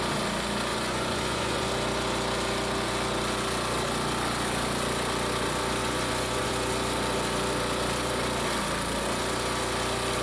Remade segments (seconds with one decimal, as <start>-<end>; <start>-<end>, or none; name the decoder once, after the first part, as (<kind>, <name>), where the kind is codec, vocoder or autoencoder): 0.7-1.7 (vocoder, Vocos); 5.8-6.5